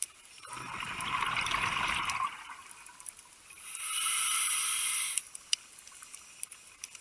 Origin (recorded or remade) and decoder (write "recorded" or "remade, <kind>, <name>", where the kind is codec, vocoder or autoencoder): recorded